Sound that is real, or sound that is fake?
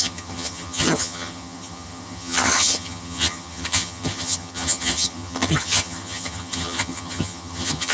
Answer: fake